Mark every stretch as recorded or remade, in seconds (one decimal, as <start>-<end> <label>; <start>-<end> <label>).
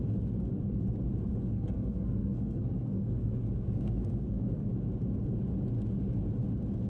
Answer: 0.0-1.4 recorded; 1.4-4.7 remade; 4.7-6.9 recorded